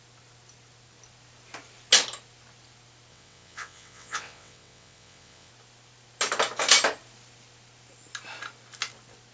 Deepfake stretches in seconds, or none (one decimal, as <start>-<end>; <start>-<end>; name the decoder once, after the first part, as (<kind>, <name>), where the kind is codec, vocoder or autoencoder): 3.1-5.5 (vocoder, WaveNeXt)